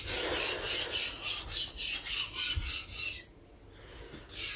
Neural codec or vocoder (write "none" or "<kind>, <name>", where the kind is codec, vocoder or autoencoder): none